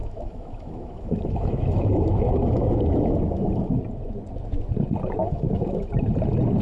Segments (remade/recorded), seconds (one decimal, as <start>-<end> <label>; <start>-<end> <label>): 0.0-3.8 remade; 3.8-5.2 recorded; 5.2-5.9 remade; 5.9-6.6 recorded